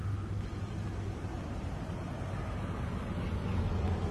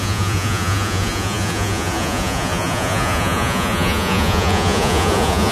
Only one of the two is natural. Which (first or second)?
first